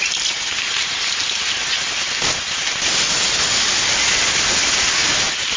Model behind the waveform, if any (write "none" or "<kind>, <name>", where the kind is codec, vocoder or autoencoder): none